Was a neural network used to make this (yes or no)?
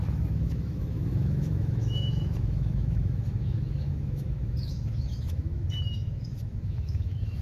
yes